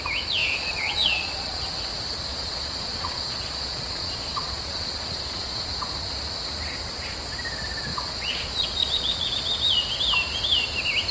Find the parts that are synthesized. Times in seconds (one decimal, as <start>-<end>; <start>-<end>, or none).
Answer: 0.4-1.6; 2.3-5.7; 7.9-9.3